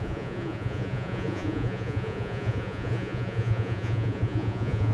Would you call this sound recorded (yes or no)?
no